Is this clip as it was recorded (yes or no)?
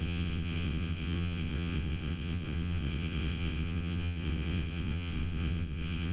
no